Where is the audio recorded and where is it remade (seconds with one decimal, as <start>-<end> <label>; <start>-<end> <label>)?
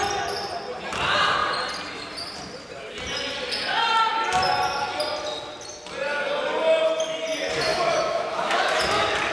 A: 0.0-7.7 recorded; 7.7-8.8 remade; 8.8-9.3 recorded